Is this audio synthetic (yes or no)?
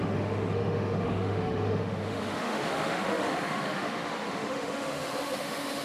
yes